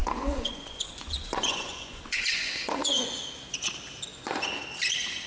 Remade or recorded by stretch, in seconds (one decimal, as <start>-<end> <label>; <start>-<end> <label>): 0.0-3.0 remade; 3.0-4.1 recorded; 4.1-4.6 remade; 4.6-5.3 recorded